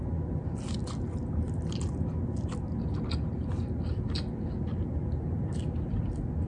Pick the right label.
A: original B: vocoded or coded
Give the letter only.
A